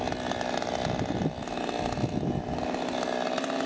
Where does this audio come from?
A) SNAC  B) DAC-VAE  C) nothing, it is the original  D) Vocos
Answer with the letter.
C